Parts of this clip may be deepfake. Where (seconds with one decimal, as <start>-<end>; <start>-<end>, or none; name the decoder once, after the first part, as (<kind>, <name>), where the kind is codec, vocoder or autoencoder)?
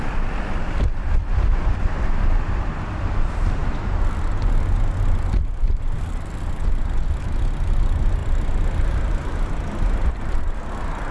0.9-2.9 (vocoder, BigVGAN v2)